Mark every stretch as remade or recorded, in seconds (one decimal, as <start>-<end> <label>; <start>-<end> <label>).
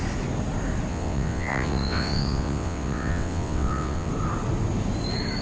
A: 0.0-0.9 recorded; 0.9-4.1 remade; 4.1-5.4 recorded